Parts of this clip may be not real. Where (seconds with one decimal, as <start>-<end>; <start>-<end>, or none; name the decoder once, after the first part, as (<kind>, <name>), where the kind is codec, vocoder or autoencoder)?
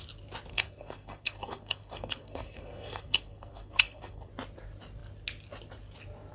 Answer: 0.5-4.3 (codec, SNAC)